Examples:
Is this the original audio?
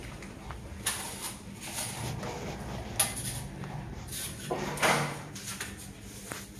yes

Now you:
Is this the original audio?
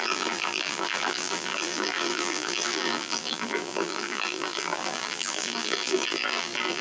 no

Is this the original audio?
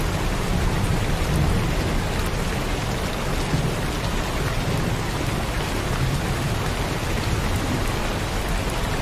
yes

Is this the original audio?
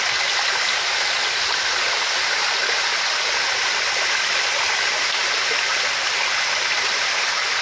yes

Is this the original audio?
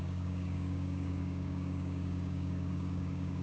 no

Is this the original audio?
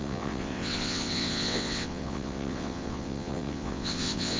no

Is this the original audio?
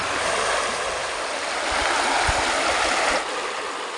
yes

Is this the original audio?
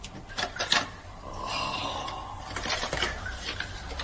yes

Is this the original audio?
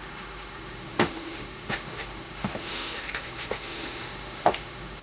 no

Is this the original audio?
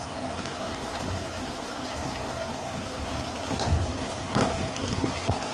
no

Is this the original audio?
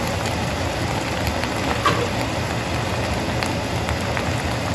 yes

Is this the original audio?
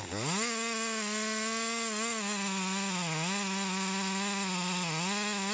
yes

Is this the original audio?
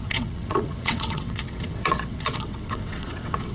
no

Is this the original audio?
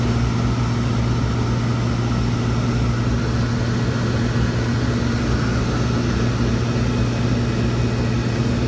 yes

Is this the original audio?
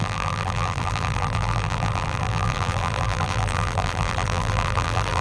no